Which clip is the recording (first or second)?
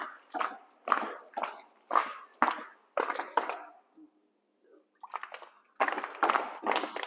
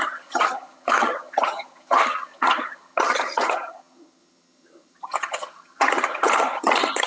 first